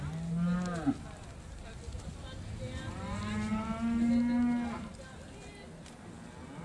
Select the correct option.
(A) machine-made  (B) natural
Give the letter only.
B